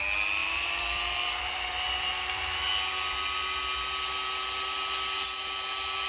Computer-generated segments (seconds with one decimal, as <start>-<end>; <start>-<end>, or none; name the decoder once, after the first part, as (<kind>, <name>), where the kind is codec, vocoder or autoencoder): 0.4-2.7 (vocoder, BigVGAN v2)